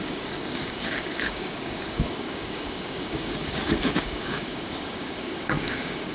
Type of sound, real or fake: fake